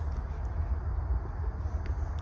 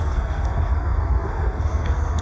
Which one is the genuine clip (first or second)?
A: first